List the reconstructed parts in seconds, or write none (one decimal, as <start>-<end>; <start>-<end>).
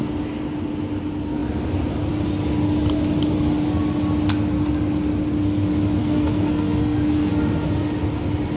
6.0-7.3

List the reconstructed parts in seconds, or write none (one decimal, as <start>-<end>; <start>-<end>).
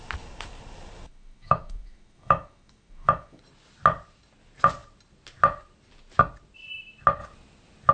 1.1-3.4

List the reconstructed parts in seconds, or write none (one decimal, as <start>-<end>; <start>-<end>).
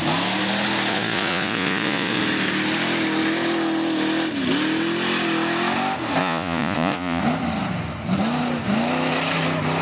0.9-2.2; 6.2-7.2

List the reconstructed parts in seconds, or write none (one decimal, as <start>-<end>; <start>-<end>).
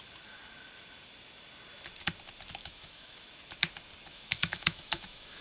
2.6-3.3; 4.1-5.4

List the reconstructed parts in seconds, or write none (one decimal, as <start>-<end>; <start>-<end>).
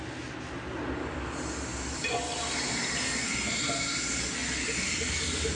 none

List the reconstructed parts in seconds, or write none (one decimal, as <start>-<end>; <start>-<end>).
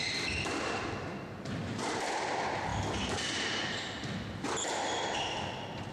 none